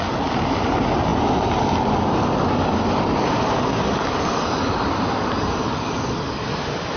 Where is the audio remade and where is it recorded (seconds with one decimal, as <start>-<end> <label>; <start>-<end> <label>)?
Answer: 0.0-7.0 recorded